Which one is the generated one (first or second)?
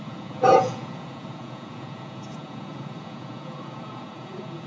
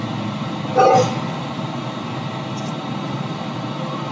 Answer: first